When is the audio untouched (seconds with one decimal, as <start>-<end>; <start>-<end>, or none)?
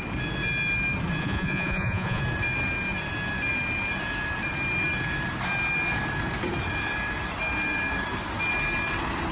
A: 0.0-1.2; 2.2-9.3